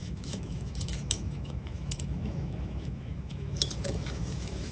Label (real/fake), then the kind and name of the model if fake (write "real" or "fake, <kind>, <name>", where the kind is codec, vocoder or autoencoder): fake, autoencoder, DAC-VAE